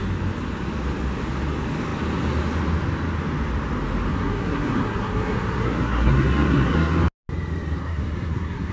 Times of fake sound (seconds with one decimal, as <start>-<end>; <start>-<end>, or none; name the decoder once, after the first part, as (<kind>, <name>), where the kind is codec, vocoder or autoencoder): 4.1-7.0 (codec, SNAC); 7.8-8.7